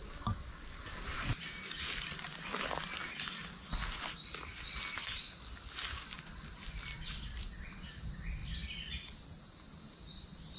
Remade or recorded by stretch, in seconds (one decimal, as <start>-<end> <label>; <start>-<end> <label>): 0.0-10.6 recorded